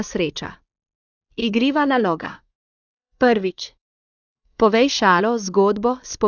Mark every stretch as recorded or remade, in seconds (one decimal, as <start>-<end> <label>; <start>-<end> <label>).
0.0-1.4 recorded; 1.4-5.2 remade; 5.2-6.3 recorded